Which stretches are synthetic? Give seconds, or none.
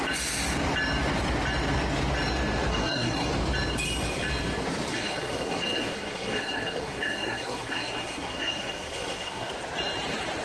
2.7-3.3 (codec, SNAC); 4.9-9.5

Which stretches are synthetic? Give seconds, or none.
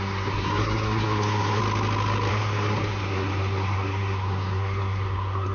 0.0-1.6 (codec, SNAC); 2.3-5.5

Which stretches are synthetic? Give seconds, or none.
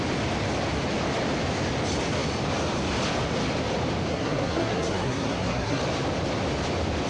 4.1-5.8 (codec, SNAC)